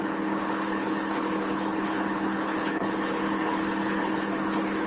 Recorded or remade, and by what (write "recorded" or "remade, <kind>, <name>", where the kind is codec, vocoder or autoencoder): remade, codec, HILCodec